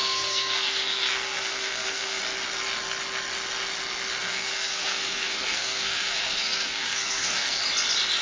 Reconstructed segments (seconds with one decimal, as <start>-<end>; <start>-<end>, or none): 0.0-2.2; 4.2-7.6